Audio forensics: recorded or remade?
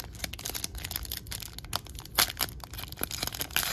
recorded